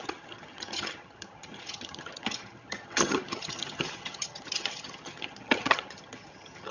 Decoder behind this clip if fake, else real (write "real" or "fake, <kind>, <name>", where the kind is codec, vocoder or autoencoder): fake, vocoder, HiFi-GAN